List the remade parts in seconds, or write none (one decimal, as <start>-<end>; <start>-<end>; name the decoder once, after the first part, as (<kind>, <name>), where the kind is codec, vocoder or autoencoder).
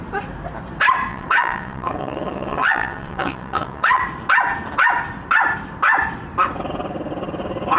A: 1.1-4.0 (vocoder, WaveNeXt)